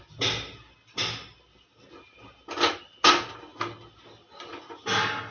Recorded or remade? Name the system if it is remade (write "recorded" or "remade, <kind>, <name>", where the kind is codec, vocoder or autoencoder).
recorded